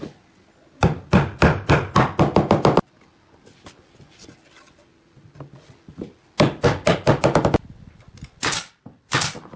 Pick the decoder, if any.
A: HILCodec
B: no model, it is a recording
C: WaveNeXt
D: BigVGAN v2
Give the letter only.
B